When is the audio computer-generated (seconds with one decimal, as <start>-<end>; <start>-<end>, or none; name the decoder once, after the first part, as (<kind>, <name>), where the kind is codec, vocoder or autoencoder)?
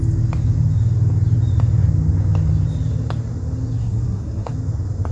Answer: 3.8-4.5 (codec, SNAC)